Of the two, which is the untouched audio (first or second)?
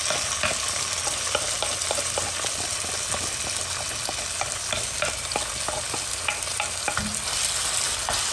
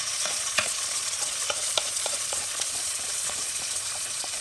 first